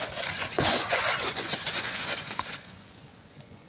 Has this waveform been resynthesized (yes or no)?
yes